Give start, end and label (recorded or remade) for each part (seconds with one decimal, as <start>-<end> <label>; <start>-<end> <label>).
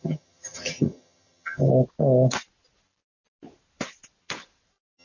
0.0-1.7 remade; 1.7-5.0 recorded